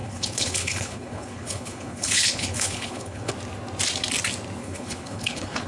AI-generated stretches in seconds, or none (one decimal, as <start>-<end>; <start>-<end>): 0.0-3.3; 4.6-5.7